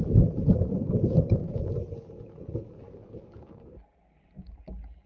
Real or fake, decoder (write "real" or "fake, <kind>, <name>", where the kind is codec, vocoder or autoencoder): real